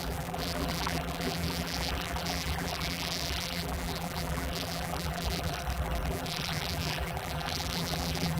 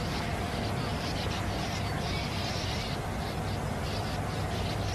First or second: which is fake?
first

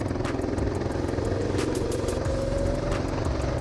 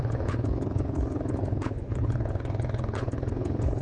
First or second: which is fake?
second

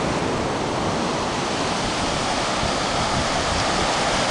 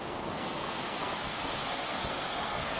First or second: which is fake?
second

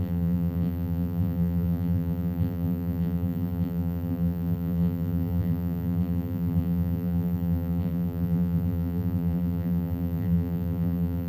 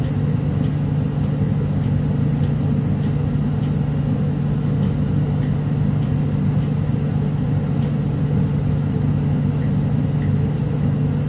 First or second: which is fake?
first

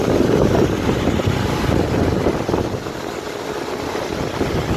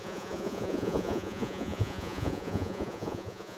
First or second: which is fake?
second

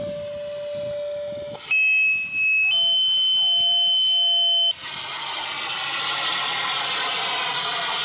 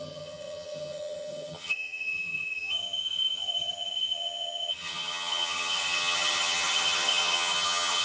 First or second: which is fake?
second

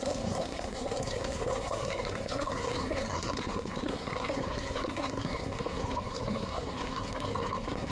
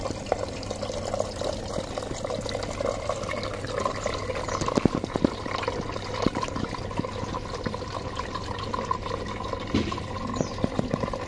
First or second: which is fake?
first